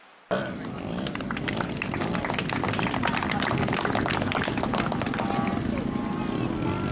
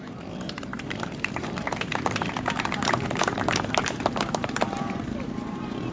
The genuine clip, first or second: first